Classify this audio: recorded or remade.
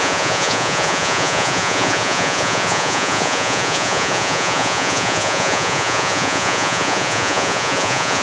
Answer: remade